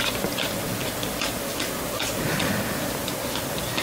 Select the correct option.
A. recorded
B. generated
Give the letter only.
A